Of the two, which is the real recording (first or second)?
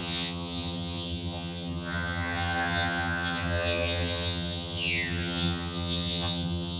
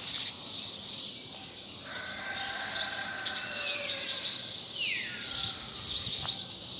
second